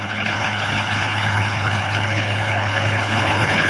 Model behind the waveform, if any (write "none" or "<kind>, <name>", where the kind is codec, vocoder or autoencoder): codec, HILCodec